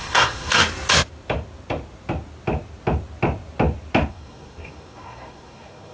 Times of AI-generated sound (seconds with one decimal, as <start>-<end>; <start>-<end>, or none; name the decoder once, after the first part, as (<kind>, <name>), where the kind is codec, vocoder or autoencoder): 0.0-0.6 (codec, SNAC); 4.1-5.9